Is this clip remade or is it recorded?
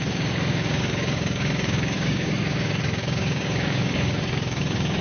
remade